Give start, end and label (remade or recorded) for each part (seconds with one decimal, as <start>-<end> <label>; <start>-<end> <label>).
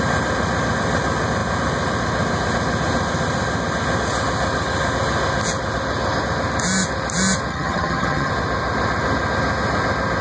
0.0-7.5 recorded; 7.5-8.3 remade; 8.3-10.2 recorded